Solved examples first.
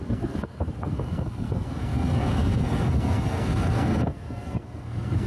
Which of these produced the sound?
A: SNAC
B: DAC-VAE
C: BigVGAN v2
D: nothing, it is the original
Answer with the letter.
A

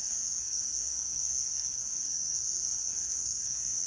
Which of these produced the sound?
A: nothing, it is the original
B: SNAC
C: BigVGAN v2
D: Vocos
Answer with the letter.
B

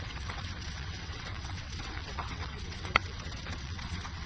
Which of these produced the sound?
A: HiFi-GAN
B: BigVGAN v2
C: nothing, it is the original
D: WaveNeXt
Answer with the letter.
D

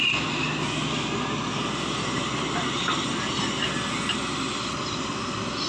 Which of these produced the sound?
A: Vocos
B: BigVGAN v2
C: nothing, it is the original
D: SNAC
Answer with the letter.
C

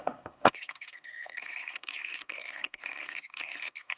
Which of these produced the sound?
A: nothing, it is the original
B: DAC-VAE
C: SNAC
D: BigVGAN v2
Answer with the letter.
C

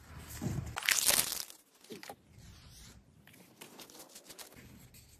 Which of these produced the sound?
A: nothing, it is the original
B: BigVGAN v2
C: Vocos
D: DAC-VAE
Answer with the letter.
A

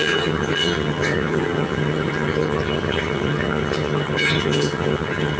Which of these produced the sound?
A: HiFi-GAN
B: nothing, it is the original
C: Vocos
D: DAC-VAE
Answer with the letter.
A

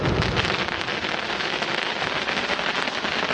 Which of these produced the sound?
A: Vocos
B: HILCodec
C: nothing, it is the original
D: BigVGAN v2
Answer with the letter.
C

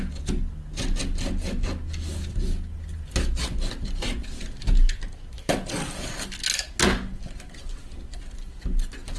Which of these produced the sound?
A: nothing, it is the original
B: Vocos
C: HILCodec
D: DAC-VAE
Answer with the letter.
A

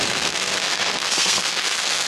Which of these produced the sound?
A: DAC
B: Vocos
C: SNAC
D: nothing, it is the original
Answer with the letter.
C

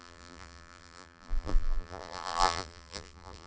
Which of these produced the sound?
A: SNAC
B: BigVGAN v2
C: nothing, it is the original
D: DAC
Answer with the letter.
B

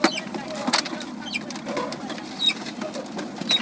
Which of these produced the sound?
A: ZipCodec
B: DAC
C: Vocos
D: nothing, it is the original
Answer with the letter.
D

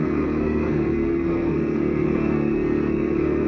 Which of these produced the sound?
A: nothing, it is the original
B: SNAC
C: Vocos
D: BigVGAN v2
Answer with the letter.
B